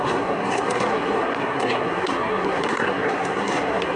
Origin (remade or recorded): remade